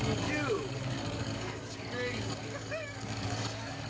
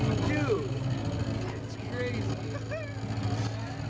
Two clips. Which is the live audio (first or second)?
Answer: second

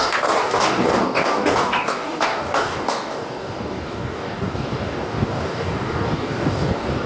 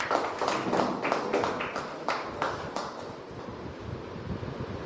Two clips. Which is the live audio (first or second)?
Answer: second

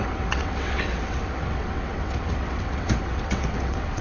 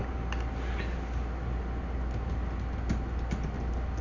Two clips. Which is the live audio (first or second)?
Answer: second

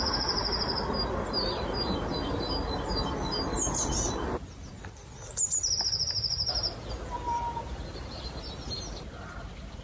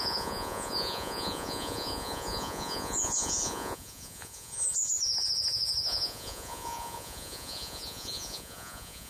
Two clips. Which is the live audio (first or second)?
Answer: first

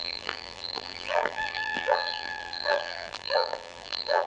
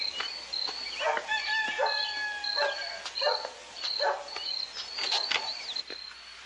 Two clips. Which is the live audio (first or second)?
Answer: second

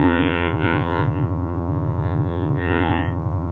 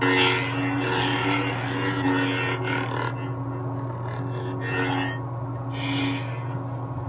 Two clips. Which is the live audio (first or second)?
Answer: second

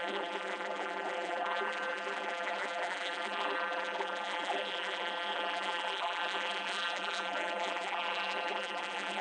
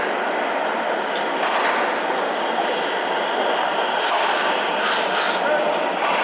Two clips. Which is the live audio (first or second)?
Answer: second